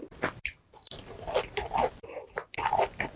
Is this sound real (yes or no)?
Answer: yes